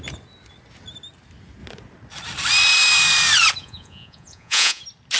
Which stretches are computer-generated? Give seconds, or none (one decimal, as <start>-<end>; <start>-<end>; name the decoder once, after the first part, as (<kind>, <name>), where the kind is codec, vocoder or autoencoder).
3.6-4.8 (vocoder, Vocos)

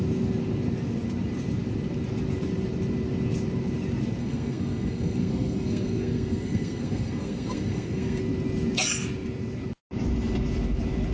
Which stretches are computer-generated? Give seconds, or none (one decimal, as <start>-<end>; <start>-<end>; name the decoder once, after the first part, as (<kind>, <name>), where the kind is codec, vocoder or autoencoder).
4.2-8.2 (codec, SNAC)

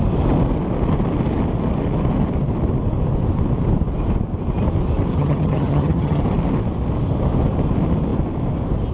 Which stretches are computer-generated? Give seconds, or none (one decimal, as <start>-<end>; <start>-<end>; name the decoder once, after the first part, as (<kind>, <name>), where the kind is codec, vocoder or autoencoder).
5.1-6.2 (vocoder, HiFi-GAN)

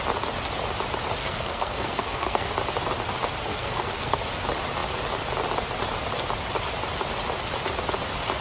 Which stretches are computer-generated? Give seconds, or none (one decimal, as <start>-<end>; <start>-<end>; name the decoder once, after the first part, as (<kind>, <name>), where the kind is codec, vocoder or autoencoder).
1.2-2.5 (codec, SNAC); 3.5-4.2

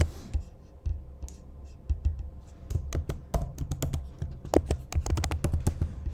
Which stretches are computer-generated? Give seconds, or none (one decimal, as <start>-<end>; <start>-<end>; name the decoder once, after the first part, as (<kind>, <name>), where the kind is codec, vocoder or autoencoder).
none